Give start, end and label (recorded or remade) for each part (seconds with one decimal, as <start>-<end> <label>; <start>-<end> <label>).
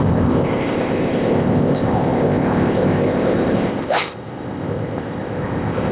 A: 0.0-5.9 remade